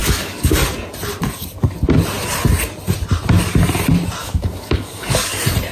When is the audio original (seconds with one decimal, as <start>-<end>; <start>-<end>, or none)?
0.6-4.2; 5.1-5.7